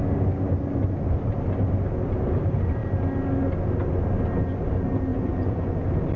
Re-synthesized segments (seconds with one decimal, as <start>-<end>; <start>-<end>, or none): 5.1-5.7